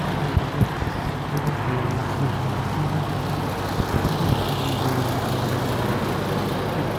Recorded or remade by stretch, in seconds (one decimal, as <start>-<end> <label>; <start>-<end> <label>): 0.0-7.0 recorded